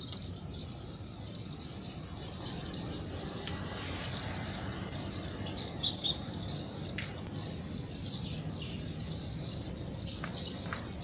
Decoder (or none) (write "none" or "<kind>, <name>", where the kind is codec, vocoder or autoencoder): none